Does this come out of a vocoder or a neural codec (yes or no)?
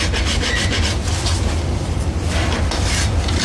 yes